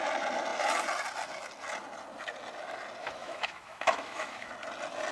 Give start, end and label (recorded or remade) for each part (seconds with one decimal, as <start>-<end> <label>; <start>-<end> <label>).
0.0-3.0 recorded; 3.0-4.5 remade; 4.5-5.1 recorded